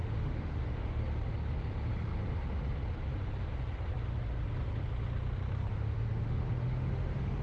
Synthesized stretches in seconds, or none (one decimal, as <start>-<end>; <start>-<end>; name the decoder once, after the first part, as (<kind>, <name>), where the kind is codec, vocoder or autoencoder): 0.0-1.0 (autoencoder, DAC-VAE); 5.7-7.4